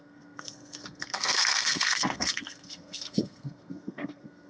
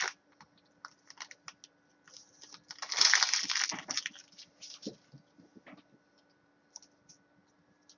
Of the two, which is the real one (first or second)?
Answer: second